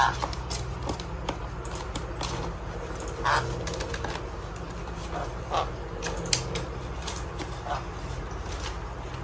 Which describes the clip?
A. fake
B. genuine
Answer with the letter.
B